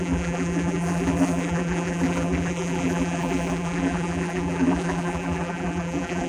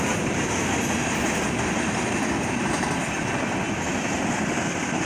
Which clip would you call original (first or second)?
second